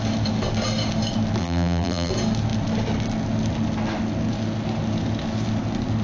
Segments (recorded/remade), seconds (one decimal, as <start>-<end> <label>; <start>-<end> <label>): 0.0-1.4 recorded; 1.4-2.1 remade; 2.1-6.0 recorded